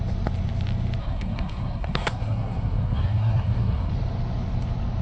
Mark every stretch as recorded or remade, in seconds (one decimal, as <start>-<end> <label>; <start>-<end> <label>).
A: 0.0-1.0 recorded; 1.0-3.9 remade; 3.9-5.0 recorded